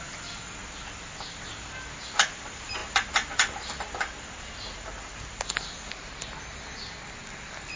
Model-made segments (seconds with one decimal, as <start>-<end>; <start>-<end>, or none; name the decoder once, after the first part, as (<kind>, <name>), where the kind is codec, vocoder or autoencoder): none